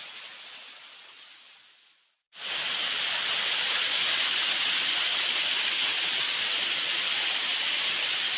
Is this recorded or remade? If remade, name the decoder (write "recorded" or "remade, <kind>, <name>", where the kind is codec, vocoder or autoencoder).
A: recorded